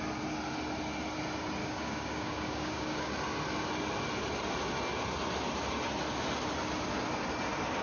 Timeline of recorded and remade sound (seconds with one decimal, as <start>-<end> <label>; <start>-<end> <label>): 0.0-1.6 recorded; 1.6-3.1 remade; 3.1-7.8 recorded